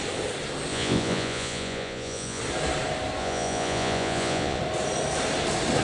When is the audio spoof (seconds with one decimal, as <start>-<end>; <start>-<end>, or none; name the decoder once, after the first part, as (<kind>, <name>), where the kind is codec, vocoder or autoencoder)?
0.7-2.4 (vocoder, Vocos); 3.2-4.6